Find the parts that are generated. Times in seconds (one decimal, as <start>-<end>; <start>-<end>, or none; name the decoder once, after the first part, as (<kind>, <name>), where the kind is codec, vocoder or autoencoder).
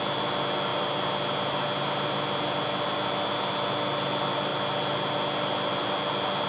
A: none